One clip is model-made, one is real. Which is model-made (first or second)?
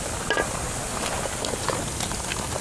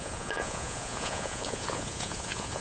second